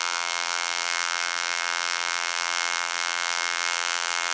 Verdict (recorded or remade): remade